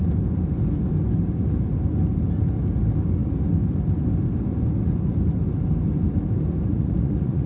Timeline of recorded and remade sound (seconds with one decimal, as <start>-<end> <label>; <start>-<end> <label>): 0.0-6.7 recorded; 6.7-7.5 remade